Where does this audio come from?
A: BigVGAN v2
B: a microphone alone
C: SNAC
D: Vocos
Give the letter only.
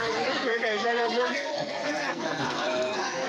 C